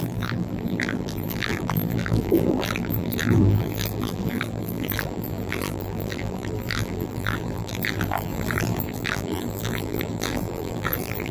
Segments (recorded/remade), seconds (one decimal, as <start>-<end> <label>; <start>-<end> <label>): 0.0-11.3 remade